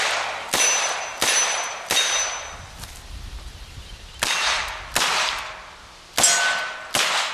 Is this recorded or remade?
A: recorded